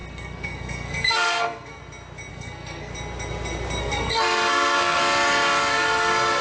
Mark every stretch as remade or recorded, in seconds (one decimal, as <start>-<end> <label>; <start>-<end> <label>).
0.0-1.8 remade; 1.8-2.3 recorded; 2.3-2.9 remade; 2.9-3.8 recorded; 3.8-5.0 remade; 5.0-5.7 recorded; 5.7-6.4 remade